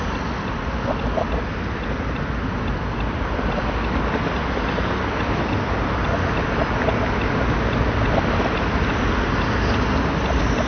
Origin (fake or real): real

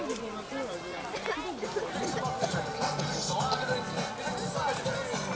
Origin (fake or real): real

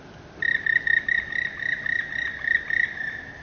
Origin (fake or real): real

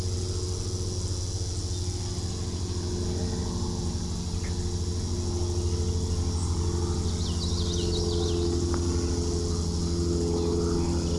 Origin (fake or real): real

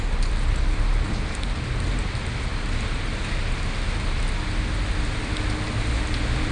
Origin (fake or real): real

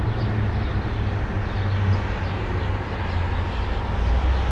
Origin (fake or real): real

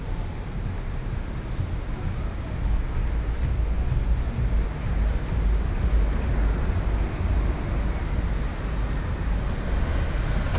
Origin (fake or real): real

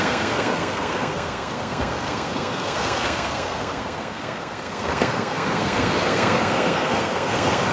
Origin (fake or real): fake